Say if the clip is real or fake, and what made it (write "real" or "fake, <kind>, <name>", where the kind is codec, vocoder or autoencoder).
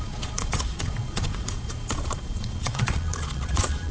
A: fake, vocoder, Vocos